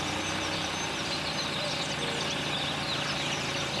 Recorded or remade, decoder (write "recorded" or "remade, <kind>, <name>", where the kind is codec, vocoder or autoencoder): recorded